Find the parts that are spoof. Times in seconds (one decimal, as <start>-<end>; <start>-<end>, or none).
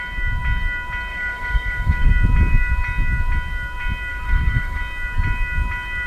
1.1-2.1; 4.1-4.8